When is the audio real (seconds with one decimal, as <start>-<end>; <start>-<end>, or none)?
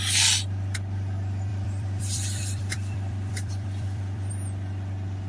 0.0-1.5; 4.3-5.3